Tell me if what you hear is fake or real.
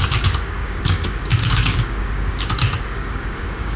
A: fake